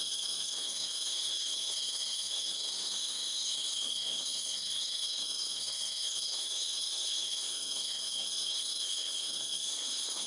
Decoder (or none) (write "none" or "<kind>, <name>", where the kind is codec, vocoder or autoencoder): codec, SNAC